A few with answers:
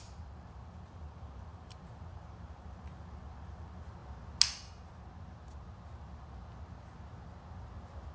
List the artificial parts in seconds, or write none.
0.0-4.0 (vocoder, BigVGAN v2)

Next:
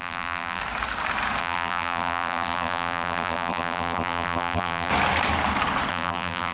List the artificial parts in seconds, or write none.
0.0-0.6 (vocoder, BigVGAN v2); 1.4-4.9; 5.9-6.5

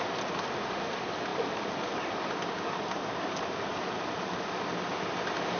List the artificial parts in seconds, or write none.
1.3-2.1 (vocoder, BigVGAN v2); 3.0-4.6